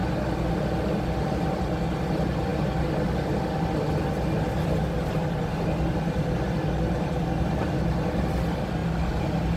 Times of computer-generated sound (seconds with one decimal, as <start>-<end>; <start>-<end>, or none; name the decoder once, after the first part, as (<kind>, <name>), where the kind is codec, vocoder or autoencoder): none